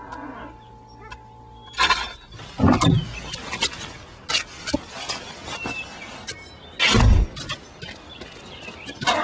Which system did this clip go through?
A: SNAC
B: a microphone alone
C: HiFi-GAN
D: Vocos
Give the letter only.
B